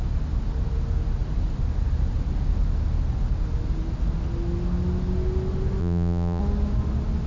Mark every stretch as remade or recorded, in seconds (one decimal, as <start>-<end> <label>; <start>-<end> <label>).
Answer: 0.0-5.8 recorded; 5.8-6.4 remade; 6.4-7.3 recorded